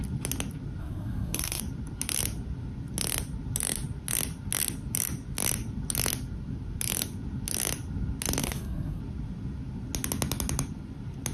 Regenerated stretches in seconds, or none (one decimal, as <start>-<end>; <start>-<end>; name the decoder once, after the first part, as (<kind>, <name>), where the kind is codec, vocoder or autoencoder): 0.8-1.6 (codec, SNAC); 8.4-9.0